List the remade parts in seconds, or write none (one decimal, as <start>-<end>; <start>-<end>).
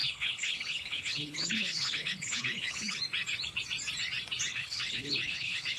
0.0-3.0; 4.5-5.8